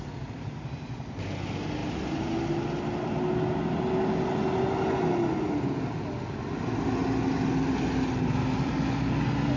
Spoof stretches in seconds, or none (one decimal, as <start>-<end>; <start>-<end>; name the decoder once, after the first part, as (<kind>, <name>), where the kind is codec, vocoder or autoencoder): none